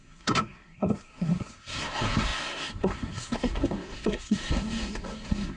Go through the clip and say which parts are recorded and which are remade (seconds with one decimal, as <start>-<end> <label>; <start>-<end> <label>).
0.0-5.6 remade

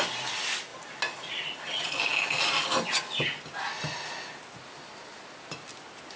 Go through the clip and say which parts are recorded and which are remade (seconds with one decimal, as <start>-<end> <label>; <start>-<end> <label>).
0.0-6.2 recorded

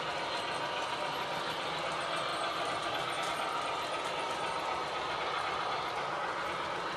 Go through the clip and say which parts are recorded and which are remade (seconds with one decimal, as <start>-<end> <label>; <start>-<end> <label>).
0.0-2.3 recorded; 2.3-3.2 remade; 3.2-7.0 recorded